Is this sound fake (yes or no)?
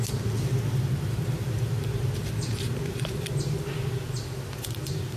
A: no